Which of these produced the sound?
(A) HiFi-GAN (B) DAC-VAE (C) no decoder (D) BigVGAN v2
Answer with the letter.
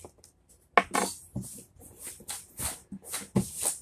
C